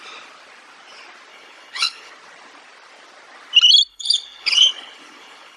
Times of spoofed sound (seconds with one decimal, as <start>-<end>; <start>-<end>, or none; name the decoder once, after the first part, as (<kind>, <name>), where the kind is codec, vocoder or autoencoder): 1.3-2.1 (codec, HILCodec); 3.9-5.6